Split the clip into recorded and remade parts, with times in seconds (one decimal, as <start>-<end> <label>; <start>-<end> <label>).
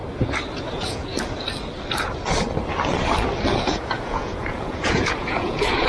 0.0-0.7 recorded; 0.7-1.1 remade; 1.1-3.6 recorded; 3.6-5.9 remade